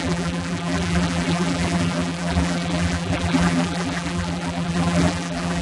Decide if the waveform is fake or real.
fake